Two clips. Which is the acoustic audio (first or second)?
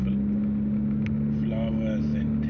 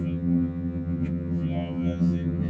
first